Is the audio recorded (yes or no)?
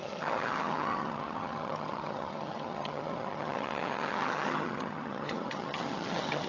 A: no